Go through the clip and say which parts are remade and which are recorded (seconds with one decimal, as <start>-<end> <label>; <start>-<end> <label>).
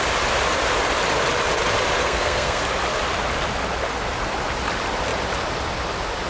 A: 0.0-2.0 recorded; 2.0-2.6 remade; 2.6-6.3 recorded